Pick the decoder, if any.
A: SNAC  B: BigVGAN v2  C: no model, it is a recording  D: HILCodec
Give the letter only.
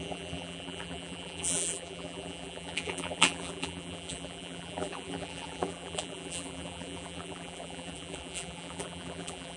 B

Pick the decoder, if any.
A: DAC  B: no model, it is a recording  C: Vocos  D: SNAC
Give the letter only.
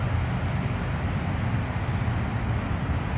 B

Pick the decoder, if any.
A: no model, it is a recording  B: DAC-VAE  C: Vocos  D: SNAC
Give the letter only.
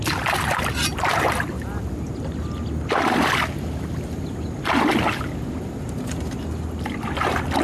A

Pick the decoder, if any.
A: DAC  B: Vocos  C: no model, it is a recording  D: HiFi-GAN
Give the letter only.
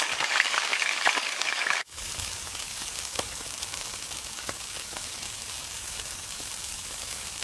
A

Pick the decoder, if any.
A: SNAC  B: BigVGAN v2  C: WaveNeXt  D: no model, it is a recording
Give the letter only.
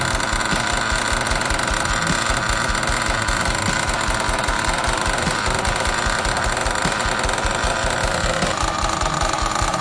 D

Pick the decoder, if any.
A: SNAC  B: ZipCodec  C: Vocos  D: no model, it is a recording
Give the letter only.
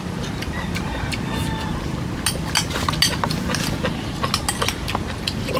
D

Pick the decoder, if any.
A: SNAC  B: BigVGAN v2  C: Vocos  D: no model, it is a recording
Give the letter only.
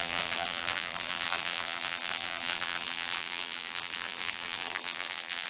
B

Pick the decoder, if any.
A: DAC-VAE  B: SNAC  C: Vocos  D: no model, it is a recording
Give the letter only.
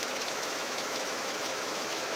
A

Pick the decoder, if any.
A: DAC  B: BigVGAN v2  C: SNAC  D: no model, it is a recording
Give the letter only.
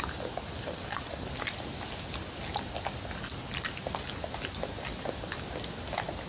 D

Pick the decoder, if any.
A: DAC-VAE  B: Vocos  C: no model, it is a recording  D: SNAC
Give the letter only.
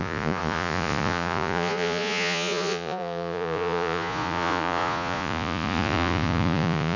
B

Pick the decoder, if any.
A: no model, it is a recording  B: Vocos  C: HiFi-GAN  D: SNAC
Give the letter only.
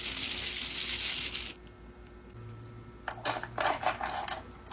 A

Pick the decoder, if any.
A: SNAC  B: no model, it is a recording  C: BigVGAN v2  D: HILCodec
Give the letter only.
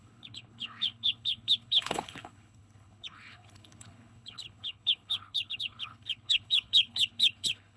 D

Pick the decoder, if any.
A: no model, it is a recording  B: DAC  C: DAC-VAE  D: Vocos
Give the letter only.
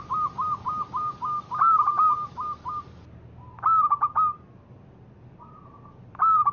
A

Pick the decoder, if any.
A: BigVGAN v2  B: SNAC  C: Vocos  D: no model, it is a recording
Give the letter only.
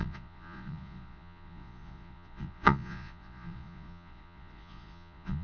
C